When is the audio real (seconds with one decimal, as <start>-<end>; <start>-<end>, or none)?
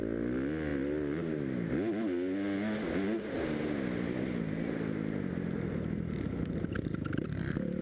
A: 0.0-7.8